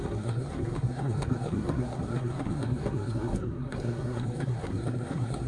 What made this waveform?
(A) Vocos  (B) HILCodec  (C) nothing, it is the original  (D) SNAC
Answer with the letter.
D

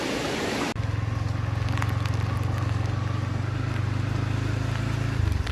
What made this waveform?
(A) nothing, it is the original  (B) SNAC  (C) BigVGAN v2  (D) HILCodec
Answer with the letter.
A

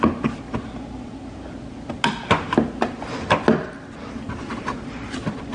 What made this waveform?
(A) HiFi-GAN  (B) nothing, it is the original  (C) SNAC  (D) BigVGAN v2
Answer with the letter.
B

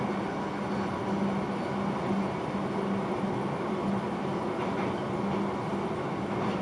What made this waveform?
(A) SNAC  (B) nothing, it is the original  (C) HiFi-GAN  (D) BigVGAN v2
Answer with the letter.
B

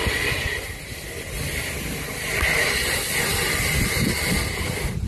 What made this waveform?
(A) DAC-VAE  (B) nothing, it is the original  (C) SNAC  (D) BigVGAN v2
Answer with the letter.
B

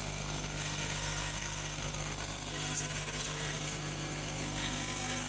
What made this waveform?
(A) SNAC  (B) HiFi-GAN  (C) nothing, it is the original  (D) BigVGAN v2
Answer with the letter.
A